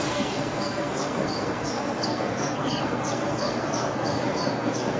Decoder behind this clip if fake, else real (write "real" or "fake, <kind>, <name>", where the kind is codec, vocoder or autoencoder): fake, codec, SNAC